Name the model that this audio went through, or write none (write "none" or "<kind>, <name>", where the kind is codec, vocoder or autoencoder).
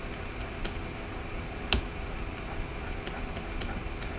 none